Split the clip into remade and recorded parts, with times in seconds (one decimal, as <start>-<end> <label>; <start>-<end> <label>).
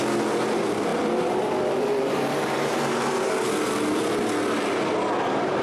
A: 0.0-0.9 recorded; 0.9-3.4 remade; 3.4-5.6 recorded